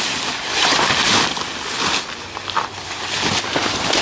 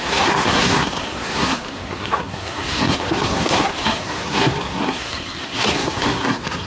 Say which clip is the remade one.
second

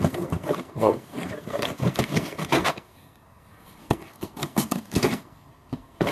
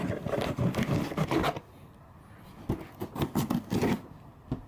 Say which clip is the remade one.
first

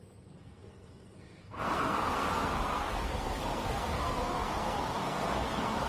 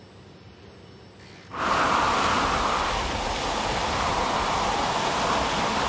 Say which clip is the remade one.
first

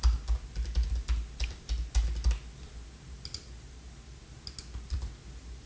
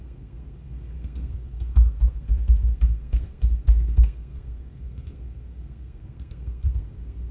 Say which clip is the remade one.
second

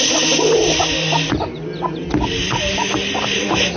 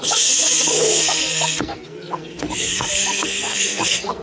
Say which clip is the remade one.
second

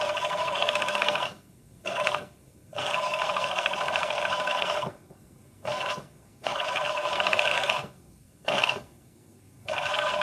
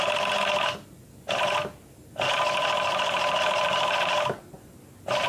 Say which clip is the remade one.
first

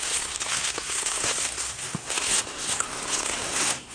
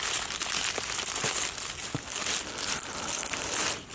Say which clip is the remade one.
first